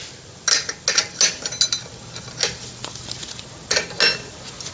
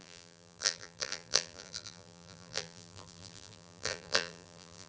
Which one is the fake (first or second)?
second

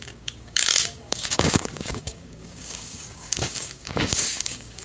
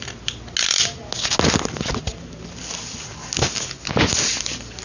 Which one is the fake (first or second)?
first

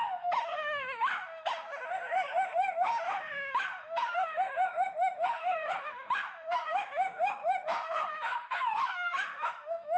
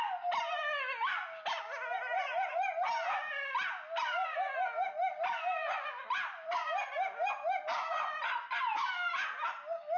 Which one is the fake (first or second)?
first